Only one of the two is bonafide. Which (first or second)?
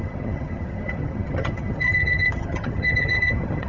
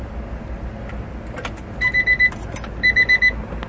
second